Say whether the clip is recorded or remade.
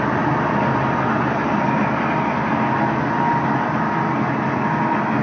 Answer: recorded